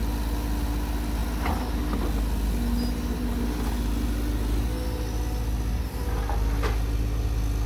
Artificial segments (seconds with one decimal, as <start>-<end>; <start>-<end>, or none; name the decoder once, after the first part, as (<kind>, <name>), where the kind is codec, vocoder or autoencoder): none